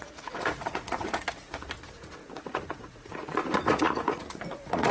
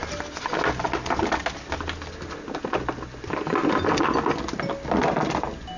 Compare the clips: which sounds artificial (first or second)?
first